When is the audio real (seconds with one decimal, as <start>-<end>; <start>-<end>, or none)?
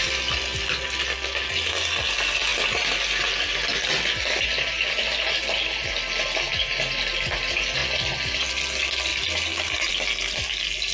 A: 0.0-10.9